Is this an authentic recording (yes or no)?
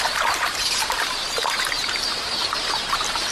no